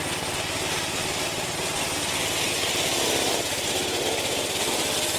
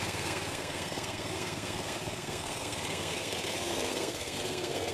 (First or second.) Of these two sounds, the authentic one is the first